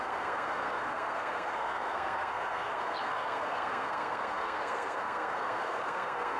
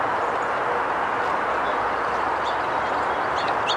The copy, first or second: first